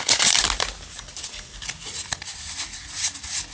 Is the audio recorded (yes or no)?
yes